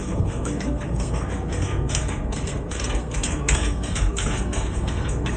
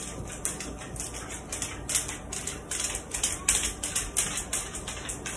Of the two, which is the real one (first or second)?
second